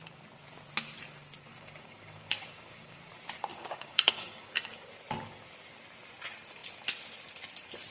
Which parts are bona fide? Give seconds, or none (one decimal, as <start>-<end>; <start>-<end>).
0.0-1.5; 3.1-3.5; 4.9-7.9